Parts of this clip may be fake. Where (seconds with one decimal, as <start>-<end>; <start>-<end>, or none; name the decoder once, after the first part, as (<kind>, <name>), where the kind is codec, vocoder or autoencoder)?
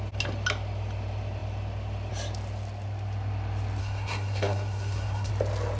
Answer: 3.8-5.3 (codec, SNAC)